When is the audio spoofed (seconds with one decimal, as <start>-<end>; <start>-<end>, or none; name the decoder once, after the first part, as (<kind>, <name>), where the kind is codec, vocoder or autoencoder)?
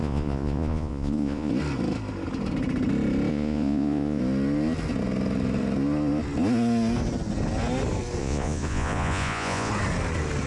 0.0-1.5 (vocoder, Vocos); 3.3-4.2; 8.2-9.7